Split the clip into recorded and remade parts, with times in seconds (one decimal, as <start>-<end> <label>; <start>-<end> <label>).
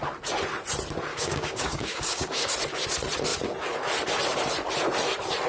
0.0-1.1 recorded; 1.1-2.5 remade; 2.5-5.5 recorded